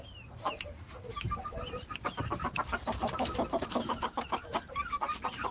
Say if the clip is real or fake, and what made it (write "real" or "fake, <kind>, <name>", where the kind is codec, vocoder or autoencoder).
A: fake, vocoder, BigVGAN v2